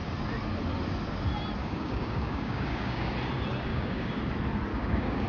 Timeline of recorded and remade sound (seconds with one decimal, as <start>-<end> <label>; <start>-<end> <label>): 0.0-1.6 recorded; 1.6-3.1 remade; 3.1-3.7 recorded; 3.7-4.2 remade; 4.2-4.7 recorded; 4.7-5.3 remade